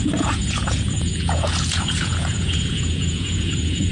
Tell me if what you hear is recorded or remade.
remade